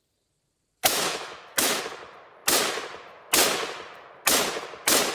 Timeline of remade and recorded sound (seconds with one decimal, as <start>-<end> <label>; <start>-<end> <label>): 0.0-0.8 recorded; 0.8-1.8 remade; 1.8-5.1 recorded